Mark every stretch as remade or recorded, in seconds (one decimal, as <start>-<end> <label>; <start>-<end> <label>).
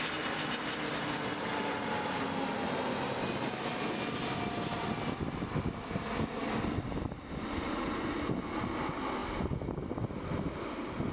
0.0-11.1 recorded